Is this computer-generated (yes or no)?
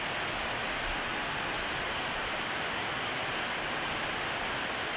no